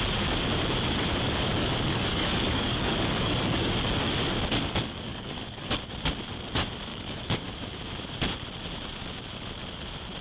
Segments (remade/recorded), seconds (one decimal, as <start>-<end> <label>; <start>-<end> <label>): 0.0-1.5 recorded; 1.5-3.7 remade; 3.7-5.1 recorded; 5.1-5.8 remade; 5.8-6.9 recorded; 6.9-7.4 remade; 7.4-10.2 recorded